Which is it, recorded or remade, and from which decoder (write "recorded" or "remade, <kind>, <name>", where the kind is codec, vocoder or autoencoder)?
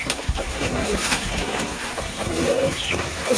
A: remade, codec, SNAC